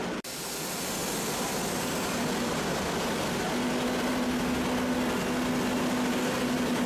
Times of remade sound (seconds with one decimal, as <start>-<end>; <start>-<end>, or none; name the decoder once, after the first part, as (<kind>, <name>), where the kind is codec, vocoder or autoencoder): none